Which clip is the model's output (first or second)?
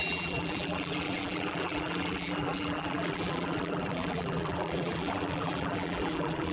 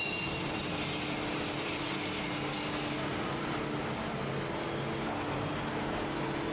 first